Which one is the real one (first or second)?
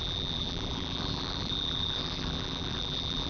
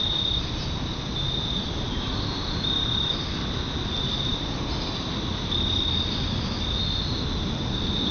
second